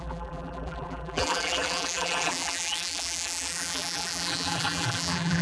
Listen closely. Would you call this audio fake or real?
fake